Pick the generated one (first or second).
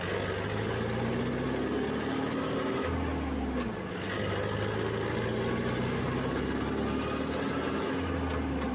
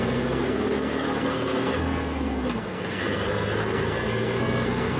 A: second